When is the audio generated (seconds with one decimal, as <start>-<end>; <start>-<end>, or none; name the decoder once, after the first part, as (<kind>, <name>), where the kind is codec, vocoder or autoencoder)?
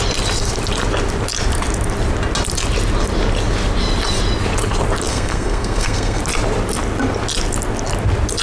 5.1-6.2 (codec, SNAC)